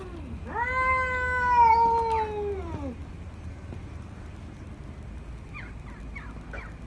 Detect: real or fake real